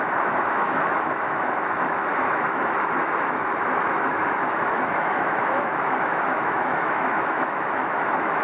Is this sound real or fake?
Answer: fake